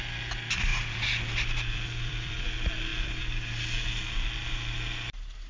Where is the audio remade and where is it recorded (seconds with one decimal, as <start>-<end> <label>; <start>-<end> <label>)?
0.0-0.7 recorded; 0.7-2.4 remade; 2.4-5.5 recorded